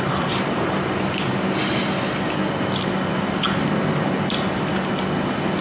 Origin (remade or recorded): recorded